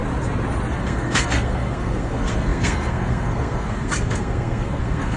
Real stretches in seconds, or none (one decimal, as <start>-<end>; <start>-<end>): 0.0-0.8